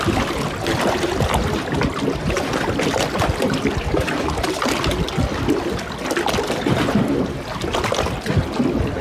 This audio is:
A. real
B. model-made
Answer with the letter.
A